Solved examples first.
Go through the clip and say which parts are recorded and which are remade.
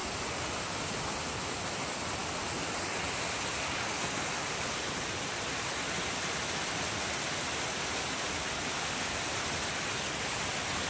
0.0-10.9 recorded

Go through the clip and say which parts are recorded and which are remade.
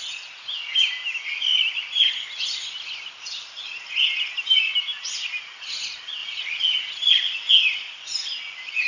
0.0-6.2 recorded; 6.2-7.5 remade; 7.5-8.9 recorded